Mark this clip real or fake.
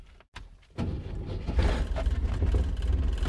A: real